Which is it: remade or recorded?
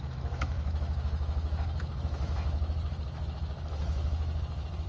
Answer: remade